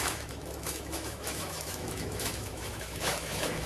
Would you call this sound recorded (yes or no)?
no